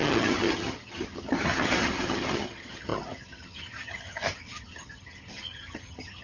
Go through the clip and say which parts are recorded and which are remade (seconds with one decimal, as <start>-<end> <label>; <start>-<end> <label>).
0.0-6.2 remade